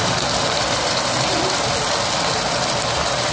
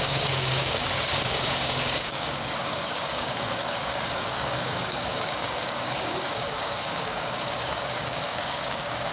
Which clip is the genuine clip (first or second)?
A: first